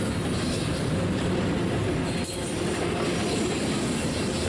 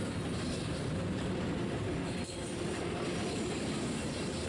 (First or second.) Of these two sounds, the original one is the first